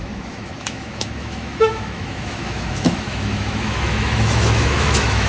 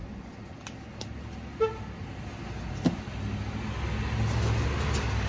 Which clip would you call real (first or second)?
second